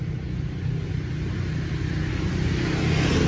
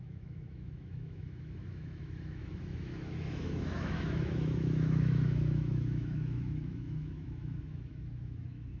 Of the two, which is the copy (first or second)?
second